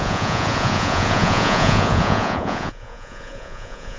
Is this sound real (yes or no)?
no